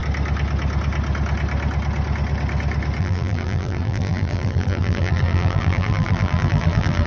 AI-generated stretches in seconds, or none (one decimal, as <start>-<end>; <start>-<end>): 3.0-7.1